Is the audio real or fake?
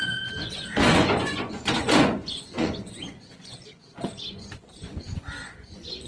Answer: fake